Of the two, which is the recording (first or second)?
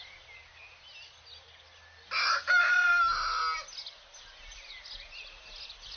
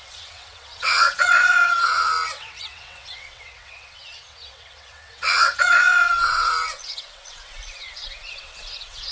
first